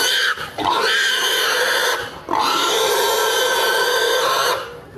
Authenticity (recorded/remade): remade